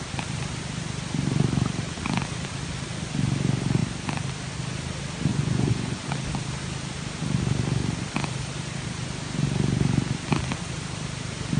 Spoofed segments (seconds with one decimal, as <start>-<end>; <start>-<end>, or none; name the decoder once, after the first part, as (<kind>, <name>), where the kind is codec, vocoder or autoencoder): 5.3-6.1 (vocoder, Vocos)